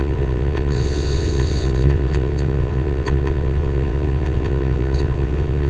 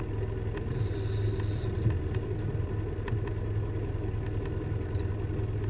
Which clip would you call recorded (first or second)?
second